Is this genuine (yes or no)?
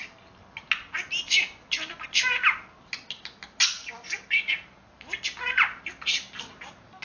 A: yes